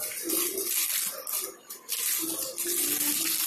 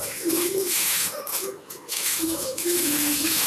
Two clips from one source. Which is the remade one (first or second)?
second